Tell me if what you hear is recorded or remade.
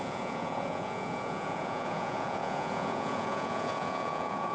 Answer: remade